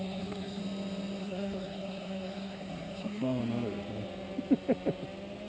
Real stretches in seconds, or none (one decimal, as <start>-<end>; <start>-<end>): 0.6-1.2; 3.4-5.5